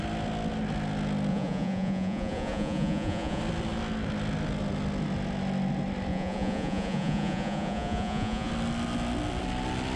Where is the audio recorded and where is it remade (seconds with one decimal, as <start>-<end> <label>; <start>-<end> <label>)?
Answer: 0.0-1.3 recorded; 1.3-3.4 remade; 3.4-6.1 recorded; 6.1-8.5 remade; 8.5-10.0 recorded